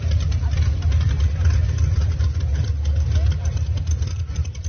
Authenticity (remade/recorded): recorded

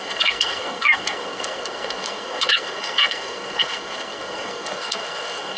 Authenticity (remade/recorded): remade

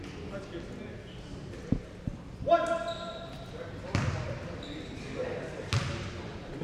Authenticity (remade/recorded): recorded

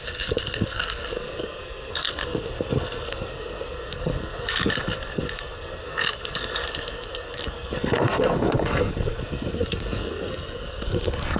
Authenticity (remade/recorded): remade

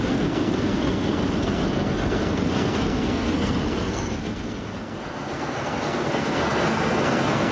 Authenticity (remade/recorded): remade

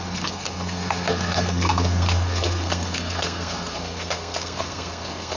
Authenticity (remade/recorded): remade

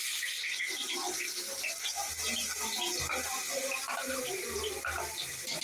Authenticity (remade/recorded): recorded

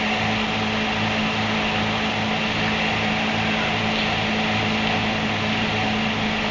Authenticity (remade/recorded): recorded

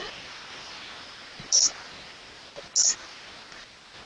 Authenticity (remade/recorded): recorded